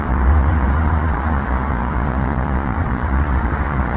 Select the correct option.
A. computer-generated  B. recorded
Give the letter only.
A